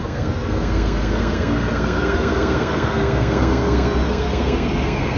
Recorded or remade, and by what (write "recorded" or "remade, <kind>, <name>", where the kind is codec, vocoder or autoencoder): remade, codec, SNAC